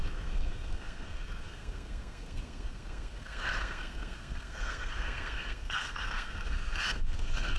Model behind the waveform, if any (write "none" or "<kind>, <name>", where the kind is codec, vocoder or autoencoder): codec, SNAC